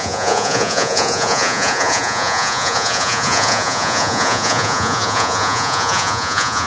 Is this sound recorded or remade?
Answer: remade